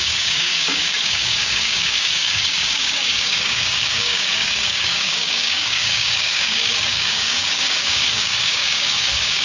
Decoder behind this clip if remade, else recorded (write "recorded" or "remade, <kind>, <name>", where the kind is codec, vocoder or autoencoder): remade, codec, DAC